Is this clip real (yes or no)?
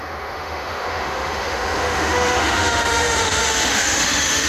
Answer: no